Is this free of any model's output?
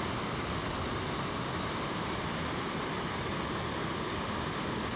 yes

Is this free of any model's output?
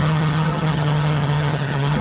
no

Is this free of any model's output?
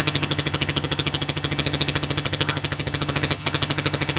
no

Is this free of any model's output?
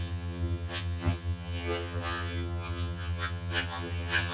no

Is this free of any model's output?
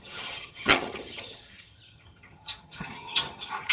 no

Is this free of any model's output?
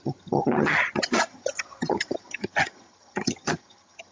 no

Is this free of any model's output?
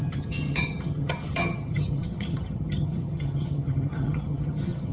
no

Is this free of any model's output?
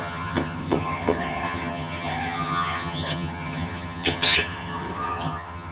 no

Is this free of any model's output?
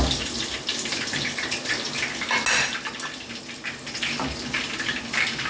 yes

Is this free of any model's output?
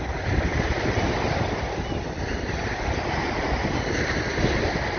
yes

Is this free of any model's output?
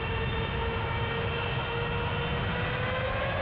yes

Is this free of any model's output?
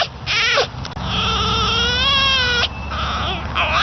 yes